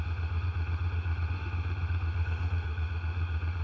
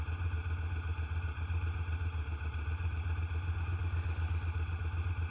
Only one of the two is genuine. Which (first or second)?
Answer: second